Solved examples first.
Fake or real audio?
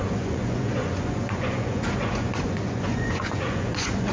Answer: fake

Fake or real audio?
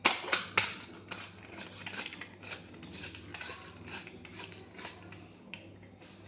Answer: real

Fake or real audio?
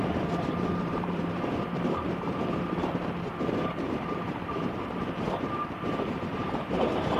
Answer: fake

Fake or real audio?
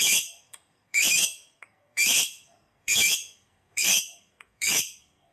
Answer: fake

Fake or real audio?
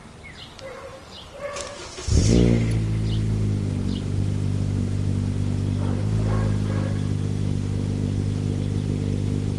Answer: real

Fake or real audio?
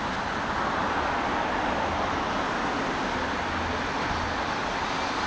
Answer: real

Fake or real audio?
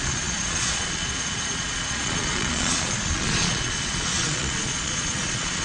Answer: fake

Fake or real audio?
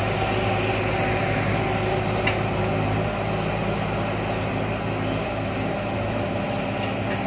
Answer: real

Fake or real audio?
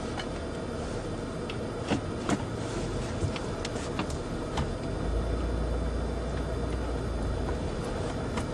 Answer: real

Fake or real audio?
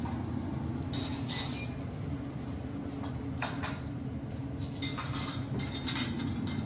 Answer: real